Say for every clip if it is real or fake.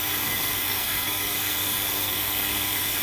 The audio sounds fake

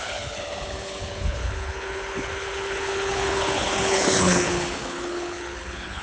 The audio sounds fake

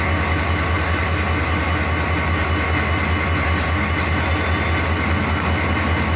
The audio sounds real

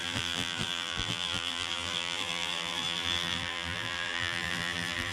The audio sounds fake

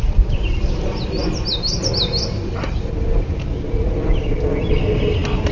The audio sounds real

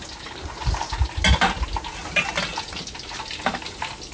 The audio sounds real